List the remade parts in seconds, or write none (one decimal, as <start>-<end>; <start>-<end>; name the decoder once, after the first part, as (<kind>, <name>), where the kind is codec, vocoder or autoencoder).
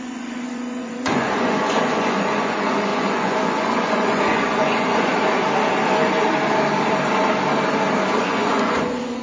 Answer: 0.0-5.1 (vocoder, Vocos); 8.2-9.2